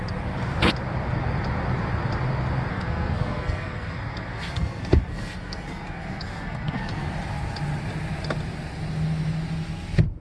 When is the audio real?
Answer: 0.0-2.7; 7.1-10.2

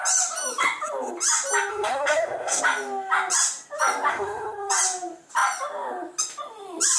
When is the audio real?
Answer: 0.0-1.7; 2.6-4.1; 4.7-7.0

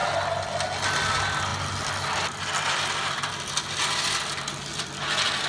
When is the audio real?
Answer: 0.0-5.5

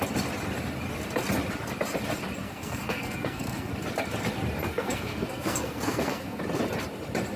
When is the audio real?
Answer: 0.0-2.4; 3.7-4.6; 6.4-7.4

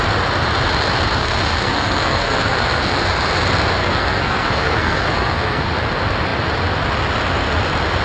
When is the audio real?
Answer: 0.0-1.2; 3.0-3.8; 5.7-8.0

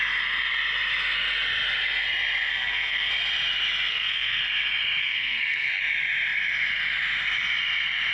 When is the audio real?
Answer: 0.0-2.5; 3.1-3.9; 4.4-5.0; 5.8-8.1